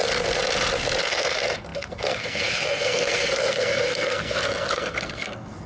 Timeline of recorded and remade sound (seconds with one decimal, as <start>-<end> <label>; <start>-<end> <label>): 0.0-1.0 recorded; 1.0-5.7 remade